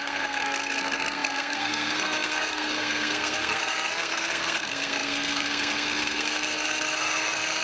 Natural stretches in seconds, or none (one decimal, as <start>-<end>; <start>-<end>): none